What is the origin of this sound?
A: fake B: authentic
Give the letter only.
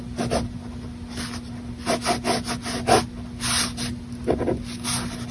B